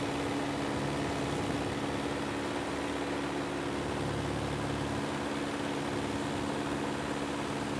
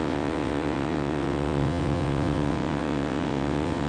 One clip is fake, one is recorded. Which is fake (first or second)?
second